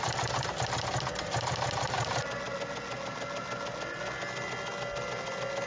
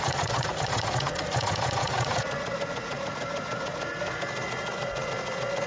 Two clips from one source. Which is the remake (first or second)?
second